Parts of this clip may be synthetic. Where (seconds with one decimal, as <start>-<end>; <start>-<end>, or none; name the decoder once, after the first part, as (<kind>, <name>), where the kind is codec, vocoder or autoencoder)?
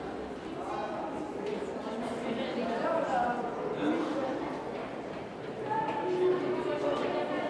none